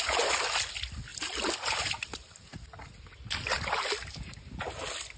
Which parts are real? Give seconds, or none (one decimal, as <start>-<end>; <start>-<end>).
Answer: 0.0-5.2